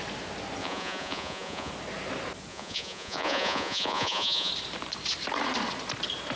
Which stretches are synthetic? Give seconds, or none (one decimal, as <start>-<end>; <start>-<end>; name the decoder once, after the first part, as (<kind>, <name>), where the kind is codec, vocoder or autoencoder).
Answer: 0.6-1.7 (vocoder, Vocos); 2.5-4.5